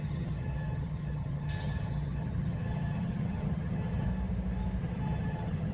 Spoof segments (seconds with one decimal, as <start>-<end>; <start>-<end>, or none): 0.0-4.1; 4.8-5.7